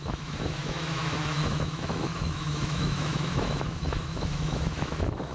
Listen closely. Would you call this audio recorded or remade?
remade